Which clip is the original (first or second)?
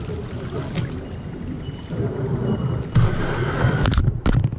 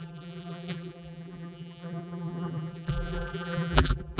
first